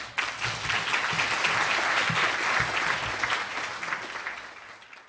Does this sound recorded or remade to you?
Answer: recorded